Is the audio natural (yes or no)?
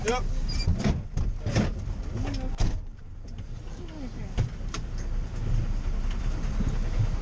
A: yes